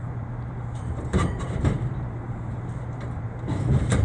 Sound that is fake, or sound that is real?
fake